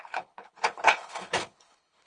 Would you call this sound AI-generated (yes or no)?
yes